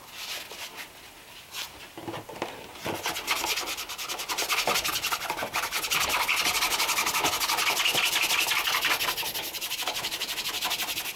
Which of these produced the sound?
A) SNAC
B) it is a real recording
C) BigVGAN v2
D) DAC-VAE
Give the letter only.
B